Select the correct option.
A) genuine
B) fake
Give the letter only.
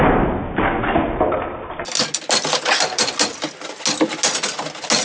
A